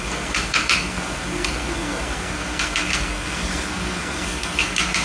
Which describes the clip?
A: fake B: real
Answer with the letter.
A